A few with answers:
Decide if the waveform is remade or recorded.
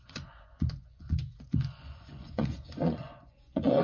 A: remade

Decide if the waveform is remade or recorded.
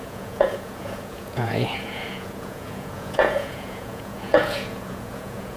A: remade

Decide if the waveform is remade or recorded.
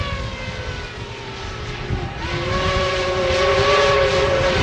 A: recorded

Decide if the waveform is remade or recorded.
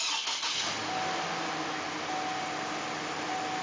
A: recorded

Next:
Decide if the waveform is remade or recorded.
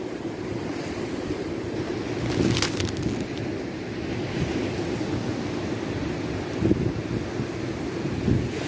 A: recorded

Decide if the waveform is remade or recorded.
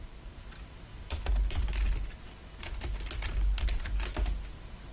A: recorded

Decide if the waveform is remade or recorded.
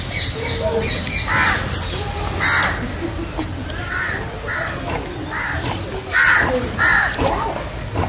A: recorded